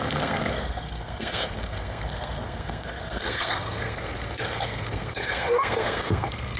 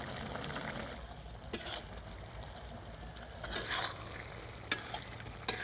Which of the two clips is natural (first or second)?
second